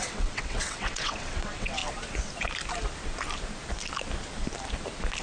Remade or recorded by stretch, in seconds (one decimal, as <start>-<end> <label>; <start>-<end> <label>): 0.0-1.8 remade; 1.8-5.2 recorded